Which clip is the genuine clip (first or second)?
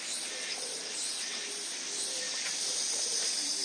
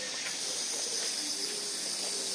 second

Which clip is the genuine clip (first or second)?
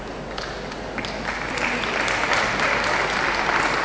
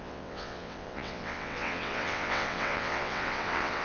first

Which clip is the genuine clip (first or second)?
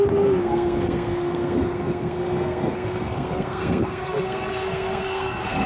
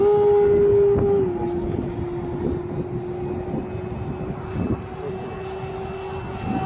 second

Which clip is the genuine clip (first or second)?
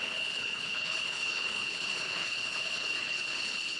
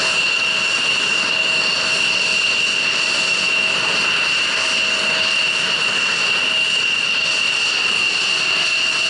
second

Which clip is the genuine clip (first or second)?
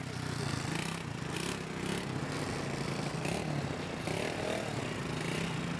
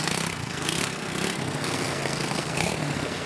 first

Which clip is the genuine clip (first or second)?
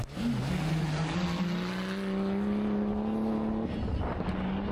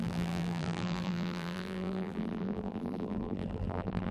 first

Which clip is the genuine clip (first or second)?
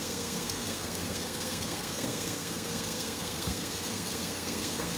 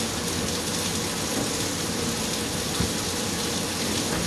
second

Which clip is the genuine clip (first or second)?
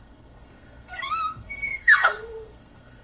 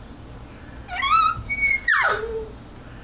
second